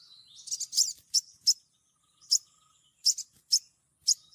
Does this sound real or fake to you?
real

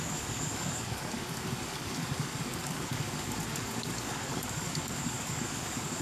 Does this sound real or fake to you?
fake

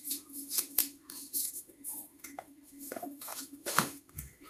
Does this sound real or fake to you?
fake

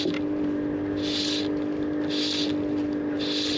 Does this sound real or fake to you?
real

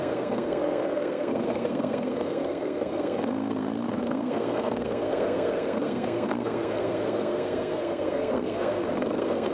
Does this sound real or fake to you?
fake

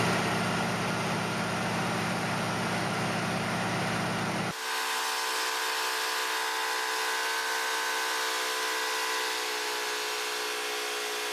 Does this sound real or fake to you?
real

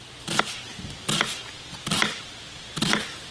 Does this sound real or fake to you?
real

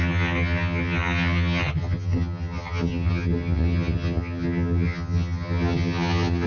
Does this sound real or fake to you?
fake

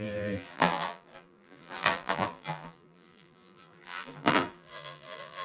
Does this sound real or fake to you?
fake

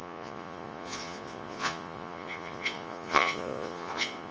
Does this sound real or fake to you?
fake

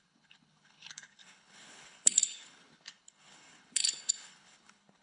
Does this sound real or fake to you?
fake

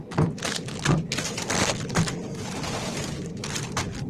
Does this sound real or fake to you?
real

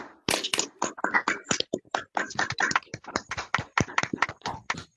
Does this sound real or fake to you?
fake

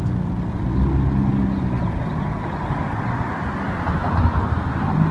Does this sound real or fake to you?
real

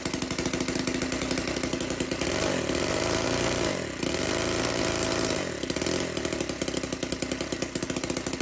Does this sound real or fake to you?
real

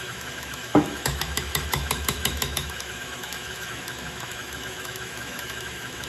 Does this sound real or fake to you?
fake